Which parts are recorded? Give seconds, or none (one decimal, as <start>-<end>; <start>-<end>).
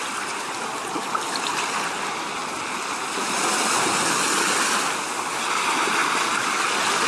0.0-7.1